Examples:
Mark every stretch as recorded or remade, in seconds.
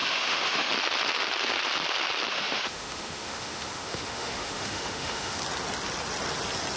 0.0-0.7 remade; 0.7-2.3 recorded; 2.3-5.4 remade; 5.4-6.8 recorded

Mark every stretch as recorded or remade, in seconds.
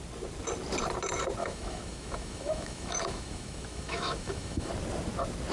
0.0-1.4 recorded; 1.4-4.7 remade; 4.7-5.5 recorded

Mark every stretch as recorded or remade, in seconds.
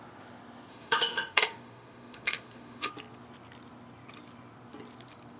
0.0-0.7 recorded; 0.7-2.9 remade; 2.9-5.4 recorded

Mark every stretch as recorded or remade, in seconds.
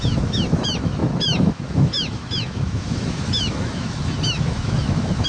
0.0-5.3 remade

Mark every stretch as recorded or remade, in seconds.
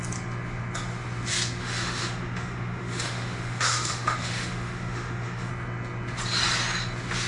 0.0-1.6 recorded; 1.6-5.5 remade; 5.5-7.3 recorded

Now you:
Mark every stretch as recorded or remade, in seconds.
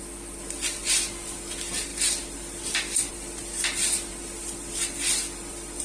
0.0-5.8 recorded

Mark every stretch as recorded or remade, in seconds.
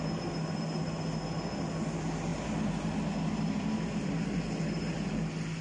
0.0-5.6 recorded